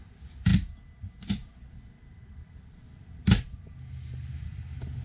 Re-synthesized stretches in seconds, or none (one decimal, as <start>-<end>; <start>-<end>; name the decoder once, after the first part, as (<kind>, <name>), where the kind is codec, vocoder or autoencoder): 0.0-0.5 (vocoder, BigVGAN v2); 1.3-5.0